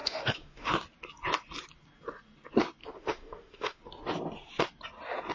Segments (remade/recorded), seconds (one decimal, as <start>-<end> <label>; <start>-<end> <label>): 0.0-0.7 remade; 0.7-2.8 recorded; 2.8-3.8 remade; 3.8-5.3 recorded